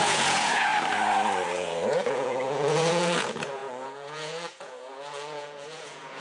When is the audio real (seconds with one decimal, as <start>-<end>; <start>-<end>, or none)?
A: 0.7-1.5